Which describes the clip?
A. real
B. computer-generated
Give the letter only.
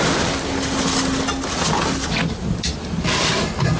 A